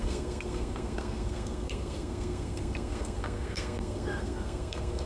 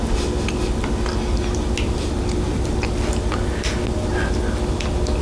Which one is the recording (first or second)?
second